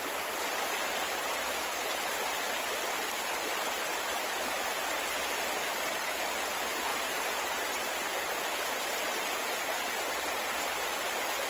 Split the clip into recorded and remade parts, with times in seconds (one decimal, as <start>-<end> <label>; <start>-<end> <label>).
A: 0.0-1.8 remade; 1.8-5.6 recorded; 5.6-11.5 remade